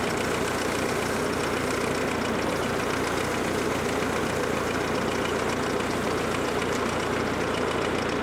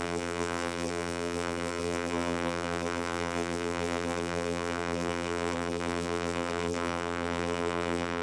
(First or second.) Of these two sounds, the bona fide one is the first